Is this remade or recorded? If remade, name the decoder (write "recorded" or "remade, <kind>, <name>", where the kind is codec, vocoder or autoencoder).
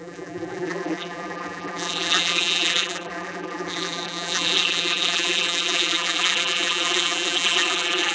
remade, vocoder, BigVGAN v2